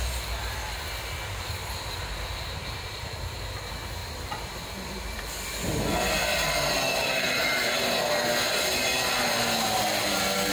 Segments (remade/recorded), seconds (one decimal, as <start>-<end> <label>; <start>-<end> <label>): 0.0-1.6 recorded; 1.6-3.4 remade; 3.4-4.0 recorded; 4.0-5.2 remade; 5.2-10.5 recorded